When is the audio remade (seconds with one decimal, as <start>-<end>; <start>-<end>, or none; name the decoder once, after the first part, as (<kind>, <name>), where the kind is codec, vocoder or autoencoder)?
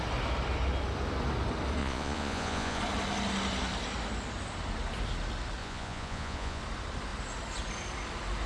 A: 1.8-2.8 (vocoder, Vocos); 5.6-6.6